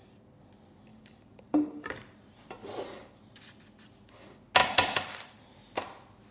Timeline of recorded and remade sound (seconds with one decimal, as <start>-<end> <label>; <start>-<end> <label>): 0.0-0.9 recorded; 0.9-2.5 remade; 2.5-4.6 recorded; 4.6-5.4 remade; 5.4-6.3 recorded